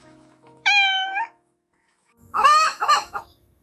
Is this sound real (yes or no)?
no